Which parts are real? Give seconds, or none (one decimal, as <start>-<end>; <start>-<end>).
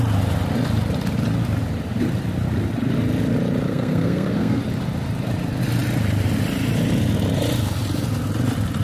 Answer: 0.0-3.7; 4.6-8.8